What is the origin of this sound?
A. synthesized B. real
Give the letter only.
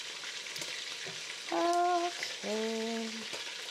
B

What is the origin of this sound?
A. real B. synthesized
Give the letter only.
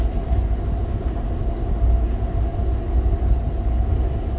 A